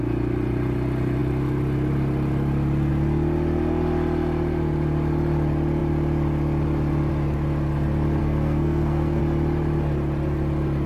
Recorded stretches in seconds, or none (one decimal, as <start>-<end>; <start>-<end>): 0.0-8.2; 9.2-10.9

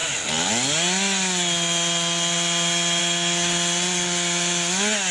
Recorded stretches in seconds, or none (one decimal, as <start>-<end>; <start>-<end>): 0.0-5.1

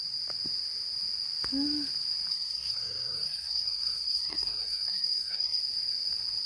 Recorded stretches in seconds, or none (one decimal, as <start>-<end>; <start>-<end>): 0.0-2.3; 5.6-6.5

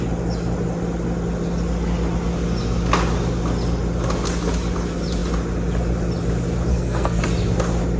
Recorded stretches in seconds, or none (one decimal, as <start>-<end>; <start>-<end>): 0.0-6.7; 7.2-8.0

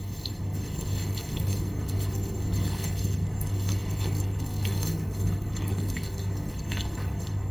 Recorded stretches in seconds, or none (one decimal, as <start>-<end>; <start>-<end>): none

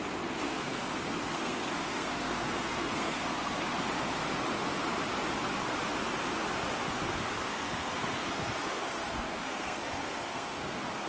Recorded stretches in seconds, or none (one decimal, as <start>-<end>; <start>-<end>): 0.0-0.4; 3.8-7.5